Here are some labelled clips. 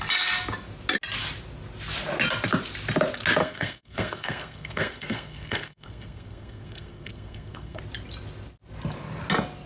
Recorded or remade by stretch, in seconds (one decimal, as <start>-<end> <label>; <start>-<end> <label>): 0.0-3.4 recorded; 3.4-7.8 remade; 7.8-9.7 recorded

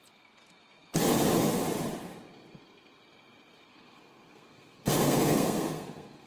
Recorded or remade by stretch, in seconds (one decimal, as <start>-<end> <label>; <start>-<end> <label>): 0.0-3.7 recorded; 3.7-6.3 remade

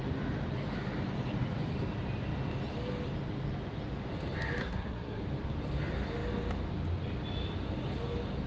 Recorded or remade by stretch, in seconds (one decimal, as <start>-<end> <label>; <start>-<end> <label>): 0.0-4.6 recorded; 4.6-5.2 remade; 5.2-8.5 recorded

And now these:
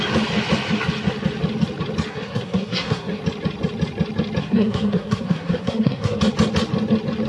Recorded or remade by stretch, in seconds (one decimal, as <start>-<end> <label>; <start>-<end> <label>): 0.0-2.1 recorded; 2.1-3.2 remade; 3.2-4.4 recorded; 4.4-6.2 remade; 6.2-7.3 recorded

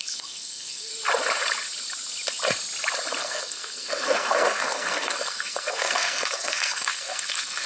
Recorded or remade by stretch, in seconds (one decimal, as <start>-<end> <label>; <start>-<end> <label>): 0.0-0.9 remade; 0.9-3.2 recorded; 3.2-7.7 remade

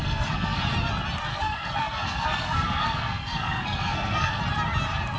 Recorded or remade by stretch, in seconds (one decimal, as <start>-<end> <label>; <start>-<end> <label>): 0.0-0.6 remade; 0.6-1.3 recorded; 1.3-4.4 remade; 4.4-5.2 recorded

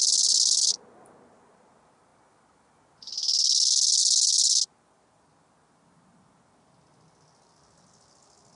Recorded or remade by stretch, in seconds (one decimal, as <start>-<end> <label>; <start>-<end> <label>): 0.0-8.6 recorded

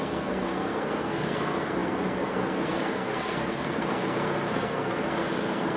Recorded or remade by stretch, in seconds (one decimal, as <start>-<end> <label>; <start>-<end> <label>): 0.0-5.8 remade